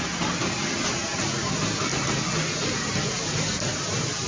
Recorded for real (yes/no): yes